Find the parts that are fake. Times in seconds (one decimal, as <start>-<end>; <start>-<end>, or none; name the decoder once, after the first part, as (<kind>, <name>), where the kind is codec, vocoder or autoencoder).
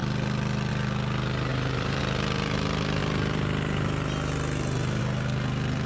1.5-2.0 (vocoder, BigVGAN v2)